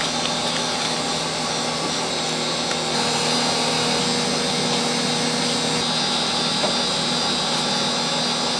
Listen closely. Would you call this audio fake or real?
real